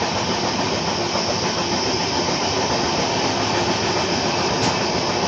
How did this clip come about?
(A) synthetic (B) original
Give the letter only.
B